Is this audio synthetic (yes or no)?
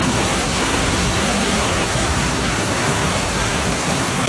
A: yes